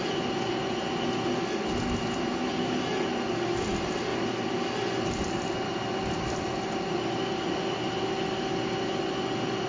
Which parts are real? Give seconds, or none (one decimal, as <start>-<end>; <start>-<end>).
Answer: 0.0-9.7